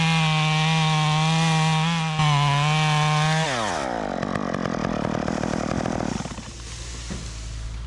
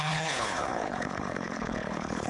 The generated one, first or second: second